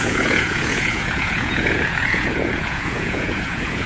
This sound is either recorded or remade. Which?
remade